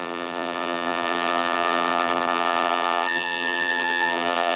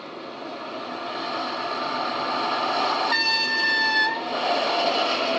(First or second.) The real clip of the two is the second